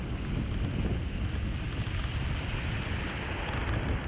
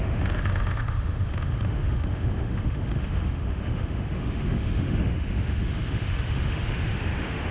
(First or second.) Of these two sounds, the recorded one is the first